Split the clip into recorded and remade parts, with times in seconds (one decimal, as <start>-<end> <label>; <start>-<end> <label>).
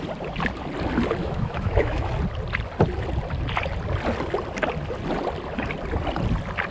0.0-1.2 recorded; 1.2-2.1 remade; 2.1-6.7 recorded